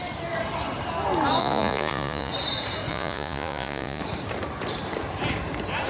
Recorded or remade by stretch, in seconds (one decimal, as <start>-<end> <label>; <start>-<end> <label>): 0.0-1.4 recorded; 1.4-2.3 remade; 2.3-2.9 recorded; 2.9-4.0 remade; 4.0-5.9 recorded